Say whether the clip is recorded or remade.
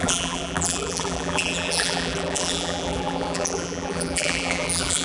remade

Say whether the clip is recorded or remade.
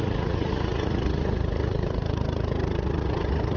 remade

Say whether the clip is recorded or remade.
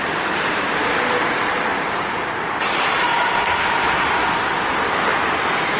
remade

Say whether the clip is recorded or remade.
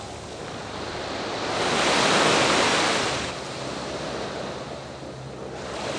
recorded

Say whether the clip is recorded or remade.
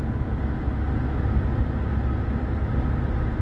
recorded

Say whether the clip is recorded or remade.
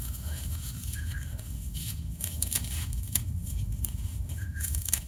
remade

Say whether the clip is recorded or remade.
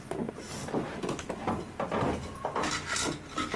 recorded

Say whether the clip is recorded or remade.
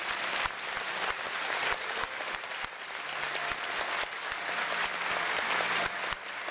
recorded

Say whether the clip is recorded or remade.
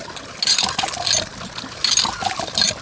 recorded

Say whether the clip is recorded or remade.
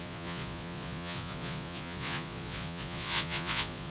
remade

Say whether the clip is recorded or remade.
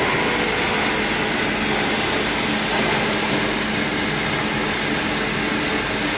recorded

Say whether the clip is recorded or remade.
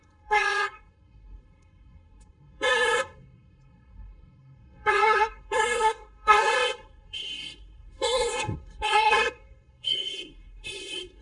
remade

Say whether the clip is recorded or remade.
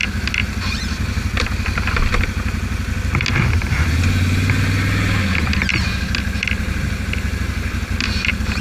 recorded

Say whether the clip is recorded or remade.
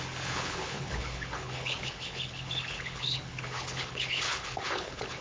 remade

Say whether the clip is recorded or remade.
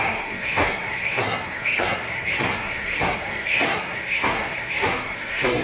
remade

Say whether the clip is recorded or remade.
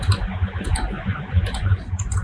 remade